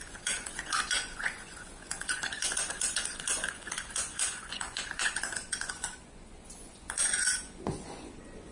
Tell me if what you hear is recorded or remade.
remade